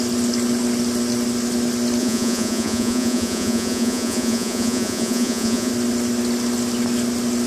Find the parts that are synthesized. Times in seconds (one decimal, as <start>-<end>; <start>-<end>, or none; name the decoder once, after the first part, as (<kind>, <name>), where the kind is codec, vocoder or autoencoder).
2.0-5.7 (vocoder, Vocos)